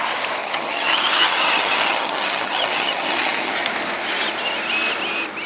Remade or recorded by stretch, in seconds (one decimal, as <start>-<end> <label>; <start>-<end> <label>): 0.0-0.4 recorded; 0.4-3.5 remade; 3.5-5.5 recorded